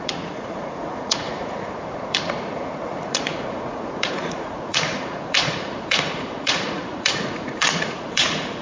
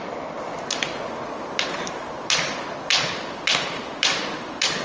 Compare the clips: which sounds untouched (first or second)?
second